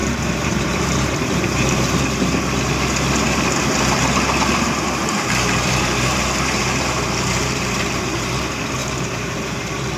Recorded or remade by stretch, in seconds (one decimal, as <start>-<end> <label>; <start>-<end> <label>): 0.0-2.0 remade; 2.0-5.0 recorded; 5.0-8.4 remade; 8.4-8.8 recorded; 8.8-10.0 remade